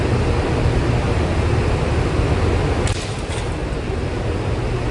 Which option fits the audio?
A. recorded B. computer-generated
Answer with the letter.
A